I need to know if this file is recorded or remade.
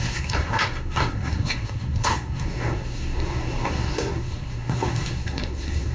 remade